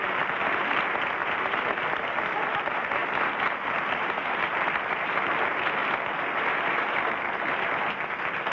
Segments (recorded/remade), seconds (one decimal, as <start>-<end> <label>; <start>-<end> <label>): 0.0-1.2 recorded; 1.2-1.9 remade; 1.9-3.0 recorded; 3.0-3.7 remade; 3.7-8.5 recorded